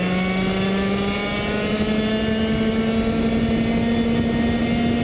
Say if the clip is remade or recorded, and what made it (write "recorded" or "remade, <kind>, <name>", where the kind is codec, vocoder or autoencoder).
recorded